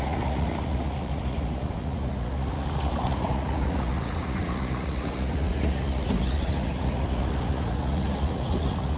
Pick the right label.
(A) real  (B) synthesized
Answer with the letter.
B